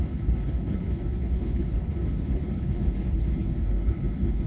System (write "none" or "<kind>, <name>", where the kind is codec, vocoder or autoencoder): codec, HILCodec